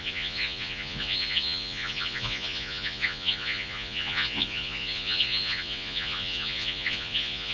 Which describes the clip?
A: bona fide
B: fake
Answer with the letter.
B